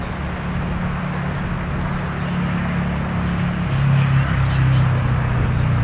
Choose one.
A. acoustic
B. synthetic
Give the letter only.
A